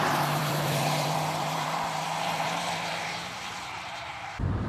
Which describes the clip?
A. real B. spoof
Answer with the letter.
B